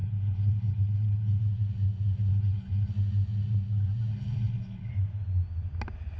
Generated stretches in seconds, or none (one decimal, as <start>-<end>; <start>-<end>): 0.0-1.4; 2.3-2.9; 4.1-4.9